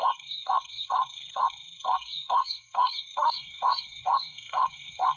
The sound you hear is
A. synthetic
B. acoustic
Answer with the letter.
A